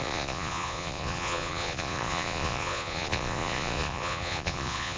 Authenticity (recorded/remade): remade